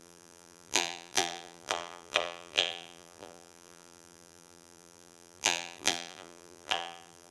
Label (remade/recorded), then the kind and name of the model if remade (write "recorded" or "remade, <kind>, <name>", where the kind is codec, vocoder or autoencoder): remade, vocoder, BigVGAN v2